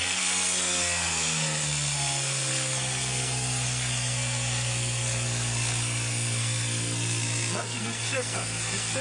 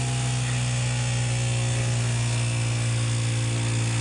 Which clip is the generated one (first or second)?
first